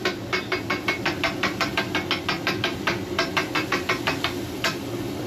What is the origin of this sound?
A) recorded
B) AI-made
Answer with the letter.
A